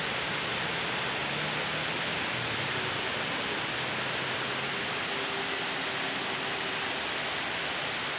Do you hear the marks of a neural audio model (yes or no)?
no